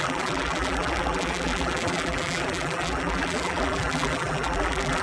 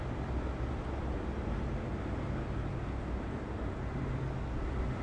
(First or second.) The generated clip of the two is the first